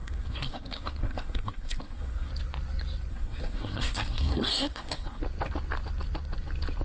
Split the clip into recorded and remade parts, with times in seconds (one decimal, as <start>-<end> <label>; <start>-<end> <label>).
0.0-2.3 remade; 2.3-3.1 recorded; 3.1-5.2 remade; 5.2-6.8 recorded